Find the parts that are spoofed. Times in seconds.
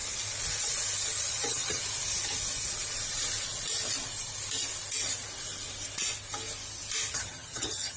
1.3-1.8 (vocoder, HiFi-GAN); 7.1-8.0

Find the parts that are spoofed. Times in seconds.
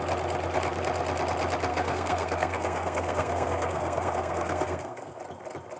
1.7-5.2 (codec, SNAC)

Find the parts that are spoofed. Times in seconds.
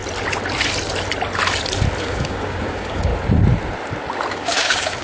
2.0-3.1 (codec, DAC); 4.3-5.0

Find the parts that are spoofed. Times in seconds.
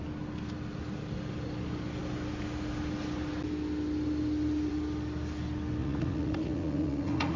5.8-7.4 (vocoder, Vocos)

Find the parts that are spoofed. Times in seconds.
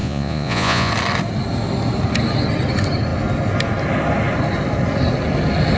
0.0-0.9 (vocoder, Vocos)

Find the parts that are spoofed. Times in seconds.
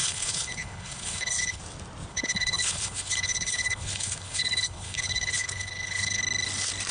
0.0-1.6 (codec, HILCodec); 2.1-6.2